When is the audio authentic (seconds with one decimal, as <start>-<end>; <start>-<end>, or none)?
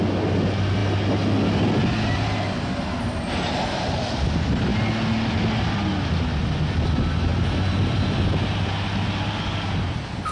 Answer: 0.0-10.3